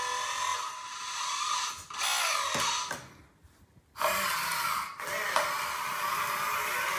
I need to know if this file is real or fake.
real